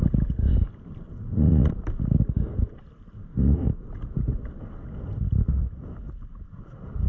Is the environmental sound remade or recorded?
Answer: recorded